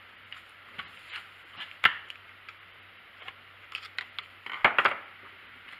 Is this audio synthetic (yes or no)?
no